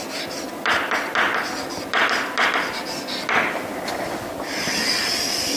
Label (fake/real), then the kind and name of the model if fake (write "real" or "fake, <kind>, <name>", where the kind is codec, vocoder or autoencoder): real